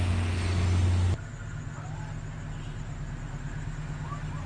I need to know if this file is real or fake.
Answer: real